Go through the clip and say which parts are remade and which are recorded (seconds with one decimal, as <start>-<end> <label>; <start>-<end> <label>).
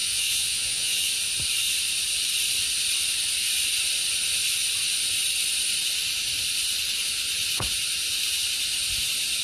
0.0-1.1 remade; 1.1-9.4 recorded